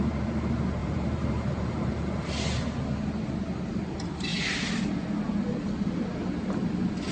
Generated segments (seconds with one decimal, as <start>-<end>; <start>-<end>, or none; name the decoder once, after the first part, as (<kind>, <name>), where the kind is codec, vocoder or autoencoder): 0.8-2.0 (vocoder, BigVGAN v2)